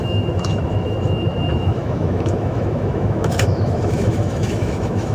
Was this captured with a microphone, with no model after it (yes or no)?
no